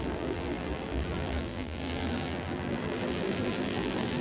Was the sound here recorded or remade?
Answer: remade